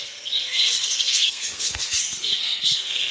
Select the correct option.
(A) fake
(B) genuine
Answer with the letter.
A